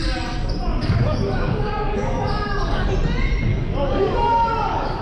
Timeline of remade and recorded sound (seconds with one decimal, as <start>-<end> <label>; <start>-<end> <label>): 0.0-0.7 recorded; 0.7-2.9 remade; 2.9-3.5 recorded; 3.5-5.0 remade

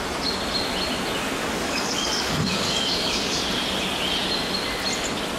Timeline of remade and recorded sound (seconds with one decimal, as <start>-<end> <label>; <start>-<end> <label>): 0.0-1.4 recorded; 1.4-3.4 remade; 3.4-5.4 recorded

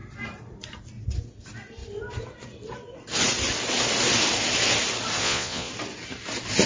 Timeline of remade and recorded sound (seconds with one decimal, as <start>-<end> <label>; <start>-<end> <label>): 0.0-5.2 recorded; 5.2-5.7 remade; 5.7-6.7 recorded